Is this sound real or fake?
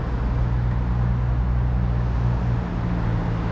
real